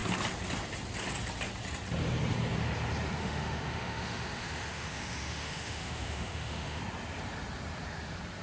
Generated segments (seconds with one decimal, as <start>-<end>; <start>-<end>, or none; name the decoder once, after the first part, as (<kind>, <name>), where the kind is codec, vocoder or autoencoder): 3.2-6.8 (autoencoder, DAC-VAE)